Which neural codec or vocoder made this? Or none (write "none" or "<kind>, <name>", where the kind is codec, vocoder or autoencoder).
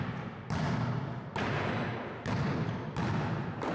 none